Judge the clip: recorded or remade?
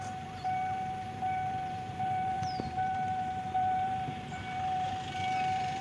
remade